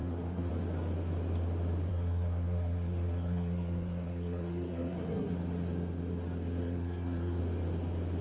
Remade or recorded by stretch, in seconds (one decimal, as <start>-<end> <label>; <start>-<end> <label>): 0.0-0.5 remade; 0.5-1.9 recorded; 1.9-5.3 remade; 5.3-6.6 recorded; 6.6-7.4 remade; 7.4-8.2 recorded